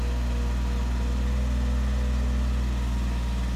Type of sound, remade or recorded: recorded